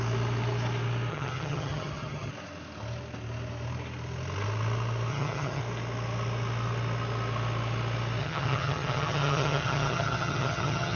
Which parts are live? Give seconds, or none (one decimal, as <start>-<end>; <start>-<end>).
0.0-1.1; 2.3-5.1; 5.6-8.2